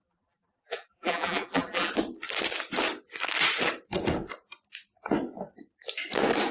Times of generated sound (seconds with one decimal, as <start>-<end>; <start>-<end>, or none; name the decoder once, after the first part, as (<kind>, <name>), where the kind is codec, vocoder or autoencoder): 0.0-1.9 (vocoder, BigVGAN v2)